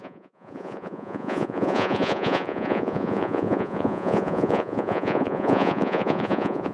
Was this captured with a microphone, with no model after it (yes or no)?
no